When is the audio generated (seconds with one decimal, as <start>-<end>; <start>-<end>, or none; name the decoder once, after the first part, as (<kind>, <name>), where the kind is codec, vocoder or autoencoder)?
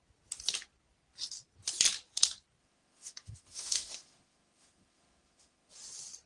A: 2.6-5.7 (autoencoder, DAC-VAE)